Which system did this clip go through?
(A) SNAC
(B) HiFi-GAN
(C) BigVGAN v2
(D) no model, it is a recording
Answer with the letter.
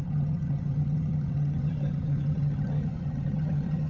B